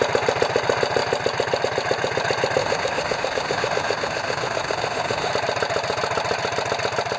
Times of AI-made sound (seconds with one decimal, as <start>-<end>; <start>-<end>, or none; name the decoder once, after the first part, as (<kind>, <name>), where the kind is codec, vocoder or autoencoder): 2.6-5.3 (autoencoder, DAC-VAE)